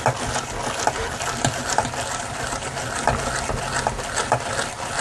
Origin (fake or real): real